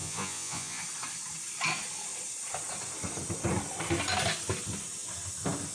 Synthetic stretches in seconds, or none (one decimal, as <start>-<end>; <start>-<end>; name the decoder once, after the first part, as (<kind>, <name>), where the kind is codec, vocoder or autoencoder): 0.0-0.8 (vocoder, Vocos)